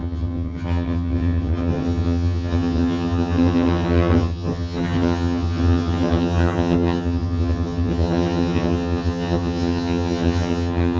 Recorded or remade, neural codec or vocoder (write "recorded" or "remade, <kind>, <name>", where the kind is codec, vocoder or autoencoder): remade, vocoder, HiFi-GAN